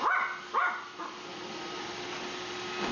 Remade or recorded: recorded